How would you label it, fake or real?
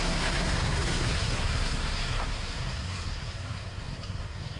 fake